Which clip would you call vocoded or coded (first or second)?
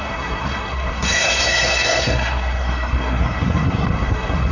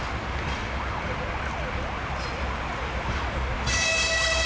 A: first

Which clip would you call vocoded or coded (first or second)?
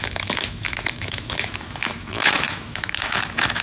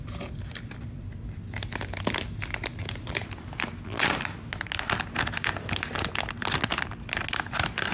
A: first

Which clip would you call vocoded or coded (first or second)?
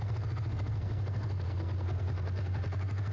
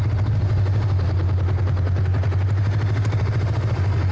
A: first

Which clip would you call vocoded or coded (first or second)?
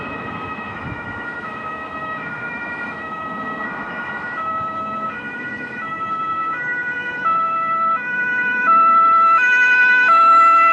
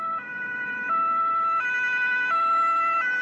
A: first